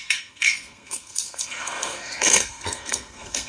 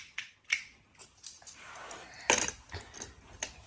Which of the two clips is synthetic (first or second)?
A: first